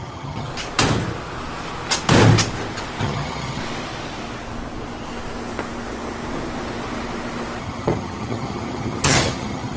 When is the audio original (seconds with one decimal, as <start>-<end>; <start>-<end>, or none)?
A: 0.5-3.0; 3.6-7.6